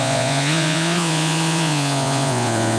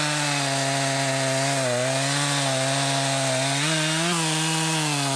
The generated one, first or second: first